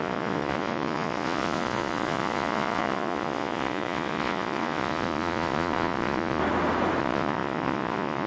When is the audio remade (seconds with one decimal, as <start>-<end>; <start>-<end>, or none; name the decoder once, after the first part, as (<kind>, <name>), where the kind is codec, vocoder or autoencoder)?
0.0-6.4 (vocoder, Vocos); 7.0-8.3